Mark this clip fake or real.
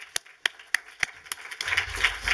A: real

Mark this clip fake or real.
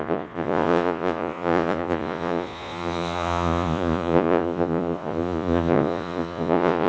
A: fake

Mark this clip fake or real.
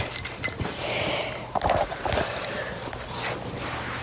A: real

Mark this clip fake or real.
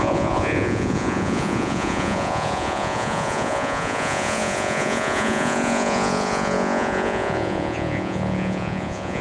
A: fake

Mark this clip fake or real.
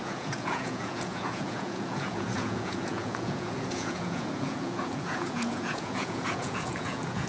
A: fake